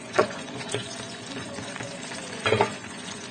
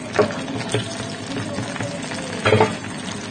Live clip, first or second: second